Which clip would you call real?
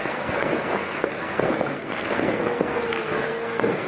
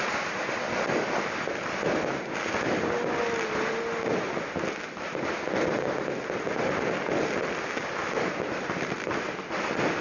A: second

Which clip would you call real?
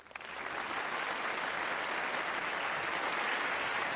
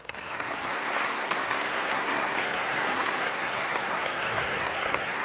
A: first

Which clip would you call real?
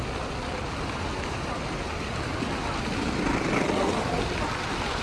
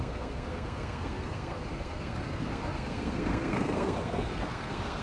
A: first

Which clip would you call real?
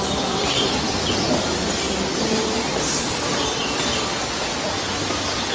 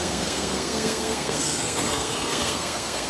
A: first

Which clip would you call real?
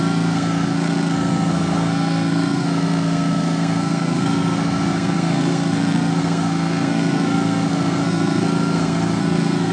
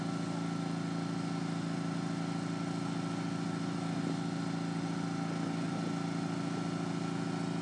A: second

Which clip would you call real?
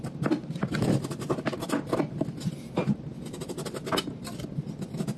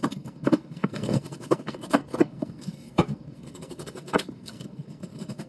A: first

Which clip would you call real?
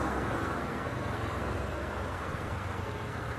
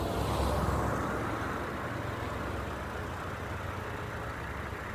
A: second